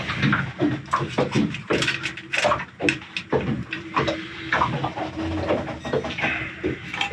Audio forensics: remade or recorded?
recorded